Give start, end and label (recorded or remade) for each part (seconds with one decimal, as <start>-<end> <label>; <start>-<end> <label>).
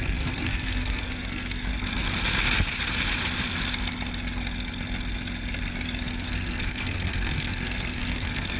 0.0-1.7 remade; 1.7-6.1 recorded; 6.1-8.6 remade